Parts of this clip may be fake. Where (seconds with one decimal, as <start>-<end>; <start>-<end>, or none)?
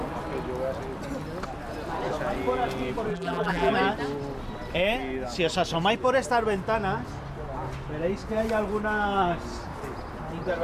3.1-3.7